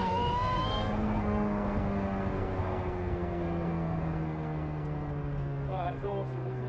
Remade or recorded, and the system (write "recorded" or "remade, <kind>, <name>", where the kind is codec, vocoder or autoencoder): remade, codec, SNAC